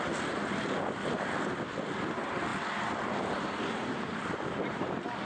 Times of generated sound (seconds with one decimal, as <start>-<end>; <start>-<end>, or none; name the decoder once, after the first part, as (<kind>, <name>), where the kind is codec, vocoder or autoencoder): none